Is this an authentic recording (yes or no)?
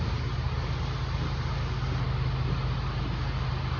yes